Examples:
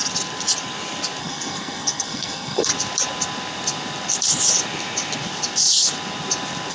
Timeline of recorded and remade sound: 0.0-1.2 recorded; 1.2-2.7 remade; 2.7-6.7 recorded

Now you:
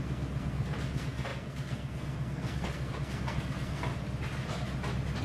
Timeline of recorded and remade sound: 0.0-3.9 remade; 3.9-5.2 recorded

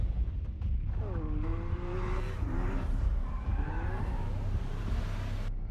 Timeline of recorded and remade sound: 0.0-1.5 recorded; 1.5-4.9 remade; 4.9-5.7 recorded

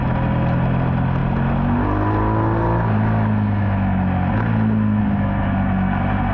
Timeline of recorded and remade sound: 0.0-6.3 recorded

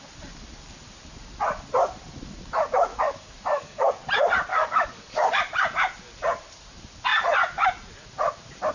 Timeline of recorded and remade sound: 0.0-2.9 recorded; 2.9-3.9 remade; 3.9-4.5 recorded; 4.5-5.4 remade; 5.4-8.7 recorded

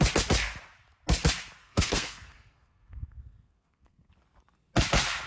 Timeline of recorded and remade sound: 0.0-1.6 recorded; 1.6-4.1 remade; 4.1-5.3 recorded